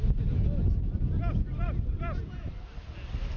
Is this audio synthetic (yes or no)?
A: no